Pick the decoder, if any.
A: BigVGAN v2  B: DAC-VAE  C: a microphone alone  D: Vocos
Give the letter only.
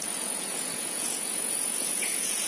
D